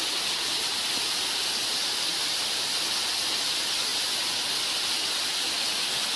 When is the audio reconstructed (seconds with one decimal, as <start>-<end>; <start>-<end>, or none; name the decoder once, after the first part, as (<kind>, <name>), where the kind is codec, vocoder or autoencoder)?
none